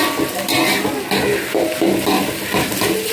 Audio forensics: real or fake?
real